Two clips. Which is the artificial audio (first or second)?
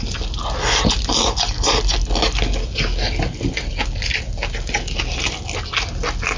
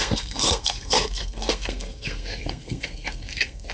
second